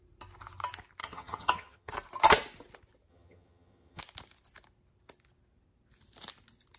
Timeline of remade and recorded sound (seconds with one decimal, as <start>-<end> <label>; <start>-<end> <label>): 0.0-1.0 recorded; 1.0-1.9 remade; 1.9-3.1 recorded; 3.1-4.0 remade; 4.0-6.8 recorded